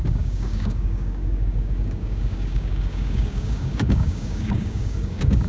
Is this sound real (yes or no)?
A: no